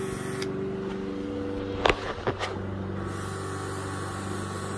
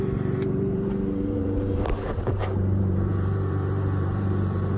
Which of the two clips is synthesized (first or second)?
second